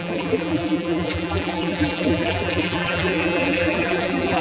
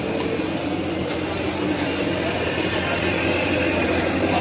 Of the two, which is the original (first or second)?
second